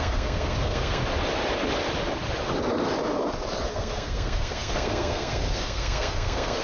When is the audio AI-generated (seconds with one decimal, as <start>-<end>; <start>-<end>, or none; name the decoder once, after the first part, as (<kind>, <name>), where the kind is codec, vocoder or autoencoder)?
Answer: 0.0-1.0 (codec, SNAC); 3.7-6.6